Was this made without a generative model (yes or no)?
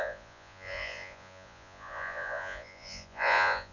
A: no